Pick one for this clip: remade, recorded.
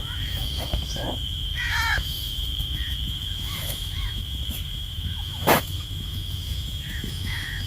remade